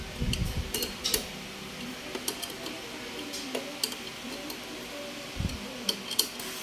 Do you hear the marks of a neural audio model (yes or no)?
no